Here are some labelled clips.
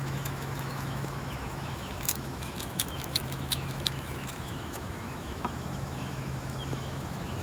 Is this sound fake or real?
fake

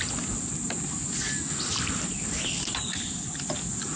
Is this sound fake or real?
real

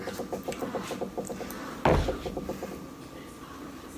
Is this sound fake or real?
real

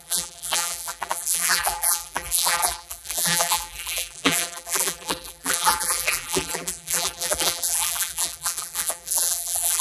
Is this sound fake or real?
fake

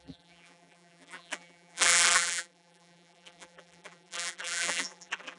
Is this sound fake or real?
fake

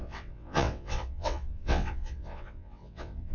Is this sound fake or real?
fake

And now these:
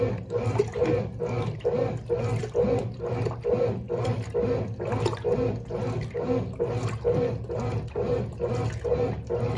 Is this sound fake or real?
real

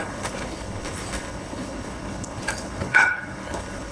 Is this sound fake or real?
fake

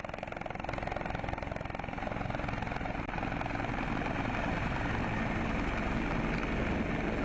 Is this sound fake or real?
real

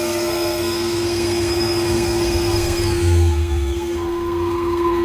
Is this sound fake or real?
fake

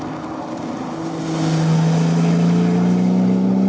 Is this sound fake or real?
real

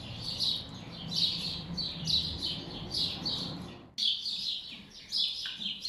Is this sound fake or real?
real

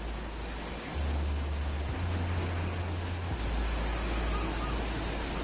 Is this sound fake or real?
real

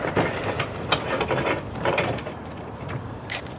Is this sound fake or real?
fake